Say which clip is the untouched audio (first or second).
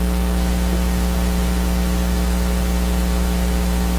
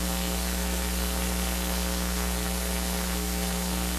first